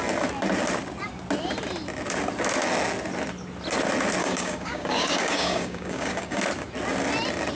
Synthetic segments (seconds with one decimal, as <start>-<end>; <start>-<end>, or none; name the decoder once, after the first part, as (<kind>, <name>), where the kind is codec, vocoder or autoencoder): 4.2-6.4 (codec, DAC)